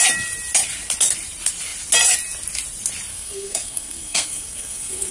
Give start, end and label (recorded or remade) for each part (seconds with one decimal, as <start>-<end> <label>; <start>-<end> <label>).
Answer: 0.0-3.1 recorded; 3.1-5.1 remade